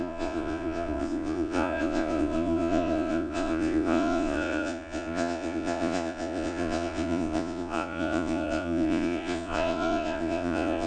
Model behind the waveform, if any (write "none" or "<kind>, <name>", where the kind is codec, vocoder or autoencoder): vocoder, Vocos